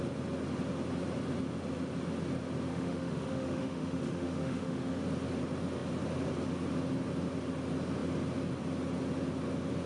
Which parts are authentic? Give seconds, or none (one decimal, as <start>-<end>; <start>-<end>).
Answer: 0.0-2.7; 5.0-9.9